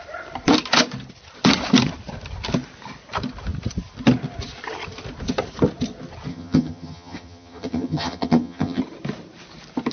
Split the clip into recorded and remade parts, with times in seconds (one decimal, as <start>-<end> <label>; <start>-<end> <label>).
0.0-6.3 recorded; 6.3-8.8 remade; 8.8-9.9 recorded